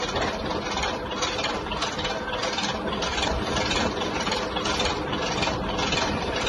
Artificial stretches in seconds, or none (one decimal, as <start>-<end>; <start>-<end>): none

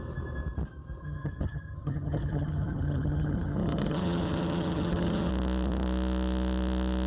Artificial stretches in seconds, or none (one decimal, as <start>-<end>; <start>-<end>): 1.0-5.3

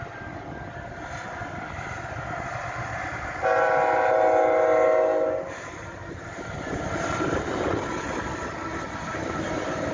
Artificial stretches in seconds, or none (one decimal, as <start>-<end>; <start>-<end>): 9.1-9.9